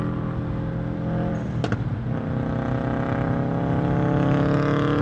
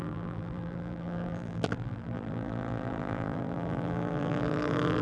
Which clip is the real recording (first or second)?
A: first